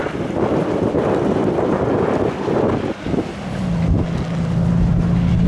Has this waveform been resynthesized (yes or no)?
no